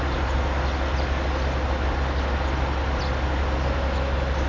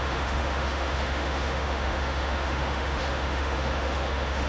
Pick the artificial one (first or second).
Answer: second